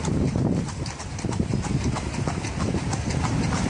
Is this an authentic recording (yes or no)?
no